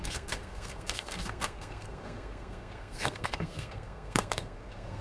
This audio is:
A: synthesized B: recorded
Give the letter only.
A